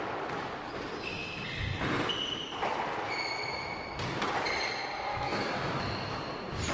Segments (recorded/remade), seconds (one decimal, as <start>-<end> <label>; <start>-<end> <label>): 0.0-5.1 recorded; 5.1-5.8 remade; 5.8-6.7 recorded